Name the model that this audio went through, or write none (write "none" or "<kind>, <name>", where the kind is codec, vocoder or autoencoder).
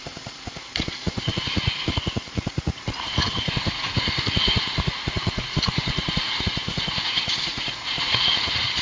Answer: vocoder, Vocos